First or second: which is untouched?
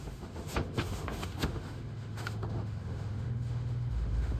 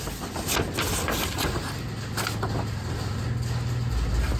second